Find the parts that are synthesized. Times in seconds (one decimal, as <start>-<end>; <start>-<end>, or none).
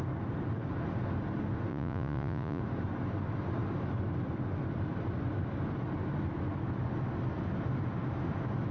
1.7-2.6